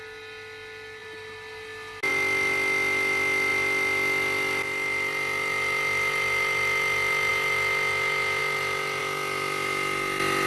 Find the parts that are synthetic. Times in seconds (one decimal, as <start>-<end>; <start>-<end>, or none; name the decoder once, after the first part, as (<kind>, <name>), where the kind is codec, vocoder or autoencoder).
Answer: none